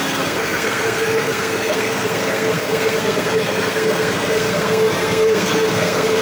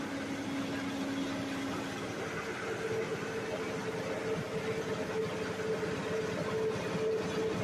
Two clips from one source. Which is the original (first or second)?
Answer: second